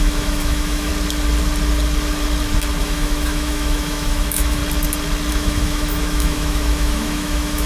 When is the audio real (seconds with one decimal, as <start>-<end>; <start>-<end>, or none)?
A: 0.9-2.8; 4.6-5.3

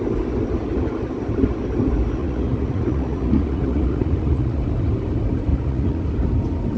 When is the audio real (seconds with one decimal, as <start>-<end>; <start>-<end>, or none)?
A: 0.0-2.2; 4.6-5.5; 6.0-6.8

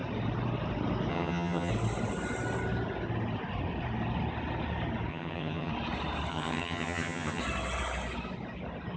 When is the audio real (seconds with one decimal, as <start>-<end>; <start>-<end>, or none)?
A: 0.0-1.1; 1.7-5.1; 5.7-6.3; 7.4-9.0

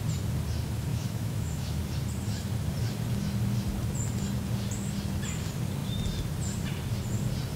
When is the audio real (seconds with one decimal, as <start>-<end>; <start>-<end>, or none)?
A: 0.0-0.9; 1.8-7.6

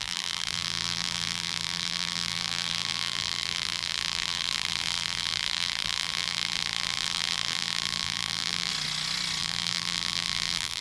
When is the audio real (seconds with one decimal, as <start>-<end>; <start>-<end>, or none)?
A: 8.7-9.4

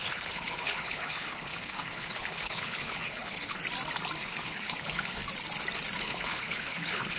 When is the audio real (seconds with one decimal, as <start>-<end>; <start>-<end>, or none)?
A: 3.6-4.2; 5.2-6.0

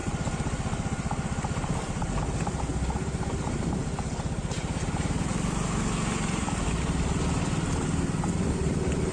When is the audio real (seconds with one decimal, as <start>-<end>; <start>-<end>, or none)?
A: 0.0-9.1

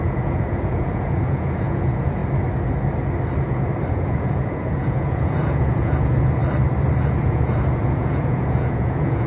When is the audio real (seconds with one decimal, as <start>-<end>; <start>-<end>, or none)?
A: 2.2-3.9; 6.4-7.2